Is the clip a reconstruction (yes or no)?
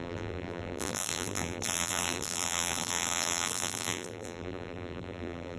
yes